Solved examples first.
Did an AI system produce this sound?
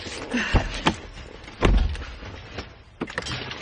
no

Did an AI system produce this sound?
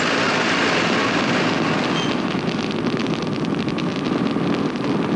no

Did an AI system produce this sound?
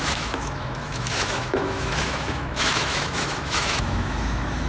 yes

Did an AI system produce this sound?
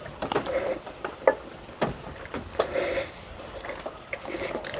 no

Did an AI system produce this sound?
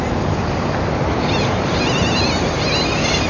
no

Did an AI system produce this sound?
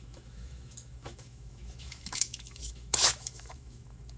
yes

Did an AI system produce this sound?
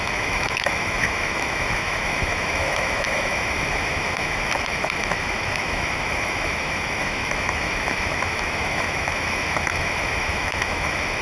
yes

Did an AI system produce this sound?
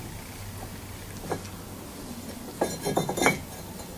no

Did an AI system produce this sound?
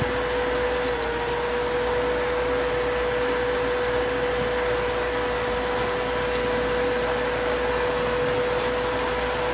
no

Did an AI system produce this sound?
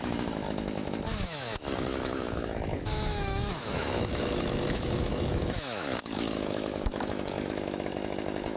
yes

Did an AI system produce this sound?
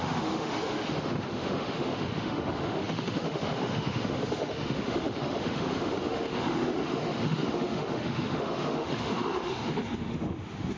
yes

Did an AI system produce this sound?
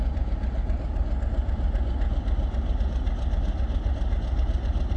no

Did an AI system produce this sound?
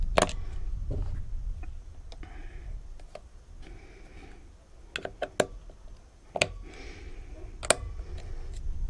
no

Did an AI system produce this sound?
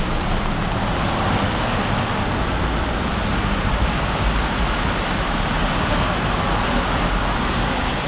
no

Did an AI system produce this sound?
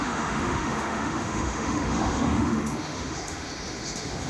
yes